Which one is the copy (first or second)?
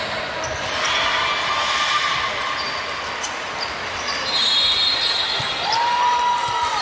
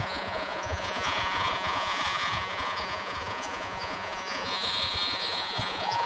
second